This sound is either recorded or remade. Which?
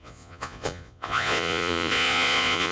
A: remade